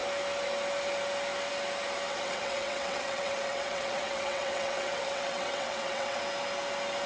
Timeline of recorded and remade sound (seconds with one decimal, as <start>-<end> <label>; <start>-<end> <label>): 0.0-2.1 recorded; 2.1-6.2 remade; 6.2-7.1 recorded